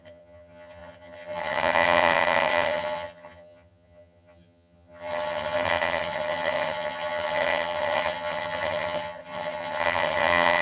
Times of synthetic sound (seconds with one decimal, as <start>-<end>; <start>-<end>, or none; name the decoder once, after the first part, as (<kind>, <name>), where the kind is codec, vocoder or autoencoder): 0.0-10.6 (vocoder, HiFi-GAN)